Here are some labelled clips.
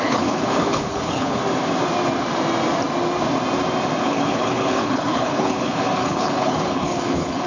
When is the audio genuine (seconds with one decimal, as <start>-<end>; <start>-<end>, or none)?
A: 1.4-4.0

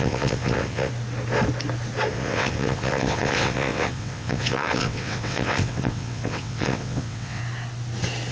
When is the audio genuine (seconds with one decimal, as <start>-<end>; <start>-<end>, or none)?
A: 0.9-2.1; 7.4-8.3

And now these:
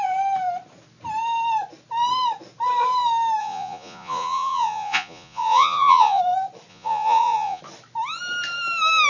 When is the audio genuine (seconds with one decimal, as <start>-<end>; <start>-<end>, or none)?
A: 0.0-3.4; 6.2-6.7; 7.6-9.1